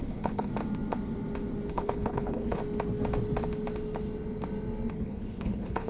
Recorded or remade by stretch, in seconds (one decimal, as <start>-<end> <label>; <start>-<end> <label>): 0.0-0.5 remade; 0.5-1.7 recorded; 1.7-2.6 remade; 2.6-4.9 recorded; 4.9-5.9 remade